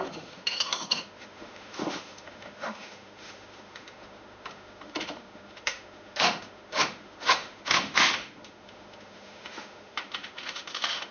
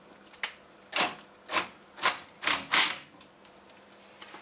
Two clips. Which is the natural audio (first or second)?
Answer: second